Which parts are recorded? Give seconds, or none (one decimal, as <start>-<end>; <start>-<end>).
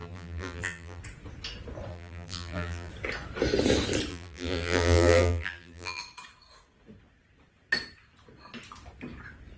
1.0-1.9; 2.9-4.1; 6.0-9.6